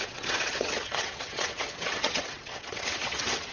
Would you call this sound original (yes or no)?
no